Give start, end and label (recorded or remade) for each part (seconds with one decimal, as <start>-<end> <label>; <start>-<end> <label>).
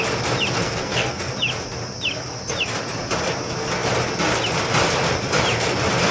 0.0-0.6 recorded; 0.6-1.3 remade; 1.3-6.1 recorded